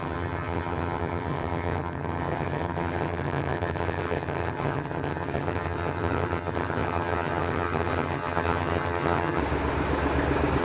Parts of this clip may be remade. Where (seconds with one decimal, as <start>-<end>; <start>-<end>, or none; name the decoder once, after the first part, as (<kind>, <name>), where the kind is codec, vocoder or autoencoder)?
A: 0.0-9.4 (vocoder, HiFi-GAN)